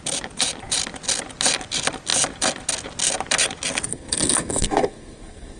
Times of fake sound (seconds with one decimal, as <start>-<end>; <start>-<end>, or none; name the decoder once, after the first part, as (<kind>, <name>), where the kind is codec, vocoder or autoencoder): 3.9-5.6 (codec, SNAC)